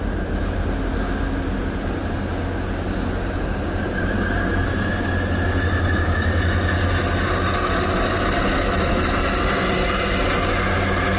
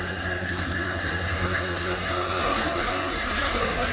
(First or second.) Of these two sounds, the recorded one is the first